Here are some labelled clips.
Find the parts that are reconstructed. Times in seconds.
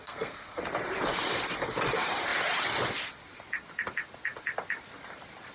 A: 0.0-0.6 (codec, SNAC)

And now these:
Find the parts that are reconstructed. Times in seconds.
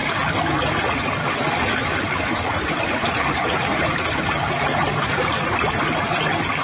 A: 3.7-5.7 (vocoder, BigVGAN v2)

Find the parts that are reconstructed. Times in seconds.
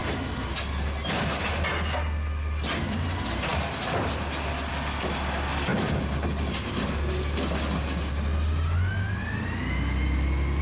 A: none